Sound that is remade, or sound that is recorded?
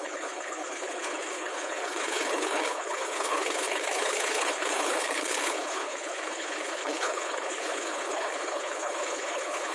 remade